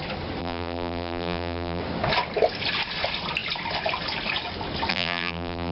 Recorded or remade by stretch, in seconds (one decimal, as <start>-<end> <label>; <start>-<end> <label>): 0.0-0.4 recorded; 0.4-1.8 remade; 1.8-4.9 recorded; 4.9-5.7 remade